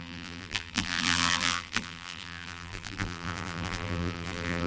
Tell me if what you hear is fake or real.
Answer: fake